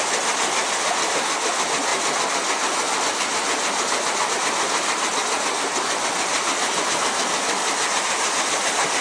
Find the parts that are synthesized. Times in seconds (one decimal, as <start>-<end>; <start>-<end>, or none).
none